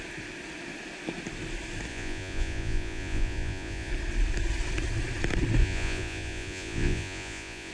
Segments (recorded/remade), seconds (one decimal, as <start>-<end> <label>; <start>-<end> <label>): 0.0-1.9 recorded; 1.9-3.9 remade; 3.9-5.6 recorded; 5.6-7.7 remade